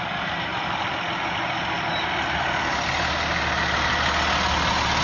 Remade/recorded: recorded